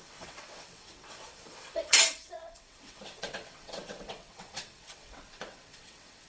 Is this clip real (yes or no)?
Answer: no